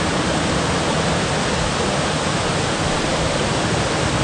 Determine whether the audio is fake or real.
real